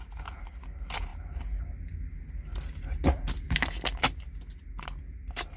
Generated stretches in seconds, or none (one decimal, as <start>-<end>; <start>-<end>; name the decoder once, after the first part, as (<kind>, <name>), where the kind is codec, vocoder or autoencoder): none

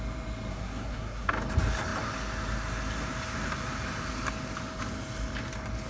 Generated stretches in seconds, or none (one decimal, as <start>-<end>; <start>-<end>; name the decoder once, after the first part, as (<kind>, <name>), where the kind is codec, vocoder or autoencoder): 0.5-1.3 (codec, SNAC)

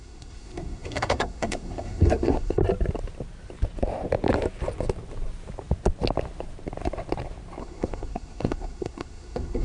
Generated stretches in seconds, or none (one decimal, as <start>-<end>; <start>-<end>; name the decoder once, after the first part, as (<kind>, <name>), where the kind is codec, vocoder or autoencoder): 0.0-2.6 (codec, SNAC); 7.6-9.6

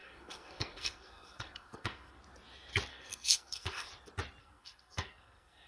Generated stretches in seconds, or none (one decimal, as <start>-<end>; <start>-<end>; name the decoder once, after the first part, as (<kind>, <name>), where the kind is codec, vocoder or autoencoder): 0.0-2.2 (codec, SNAC); 2.9-3.9; 4.4-5.7

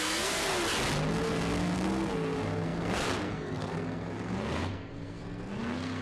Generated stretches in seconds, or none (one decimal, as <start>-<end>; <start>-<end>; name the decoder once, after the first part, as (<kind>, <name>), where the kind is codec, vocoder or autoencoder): 0.0-0.5 (codec, SNAC); 1.1-6.0

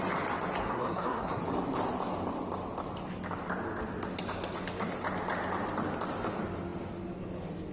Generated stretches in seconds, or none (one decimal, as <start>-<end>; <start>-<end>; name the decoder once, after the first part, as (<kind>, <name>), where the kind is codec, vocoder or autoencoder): 0.6-1.4 (codec, SNAC)

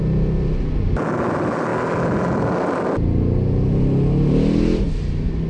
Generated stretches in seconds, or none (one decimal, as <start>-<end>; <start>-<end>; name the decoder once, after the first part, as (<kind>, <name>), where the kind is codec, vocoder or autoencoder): none

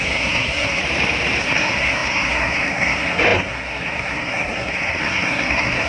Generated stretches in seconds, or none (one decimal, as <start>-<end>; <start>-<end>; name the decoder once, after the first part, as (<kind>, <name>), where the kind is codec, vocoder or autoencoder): 0.0-0.8 (codec, SNAC); 1.4-5.9